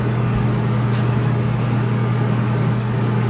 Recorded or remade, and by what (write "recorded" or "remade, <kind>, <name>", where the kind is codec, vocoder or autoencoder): remade, codec, DAC